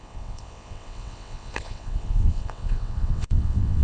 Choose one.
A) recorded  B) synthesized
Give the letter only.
B